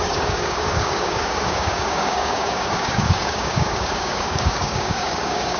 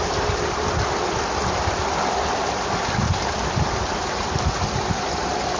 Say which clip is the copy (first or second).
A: first